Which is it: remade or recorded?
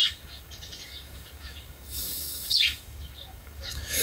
remade